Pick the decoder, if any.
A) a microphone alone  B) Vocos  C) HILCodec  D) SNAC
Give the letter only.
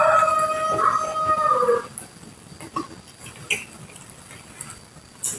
A